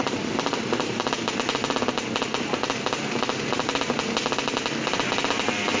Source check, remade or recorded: recorded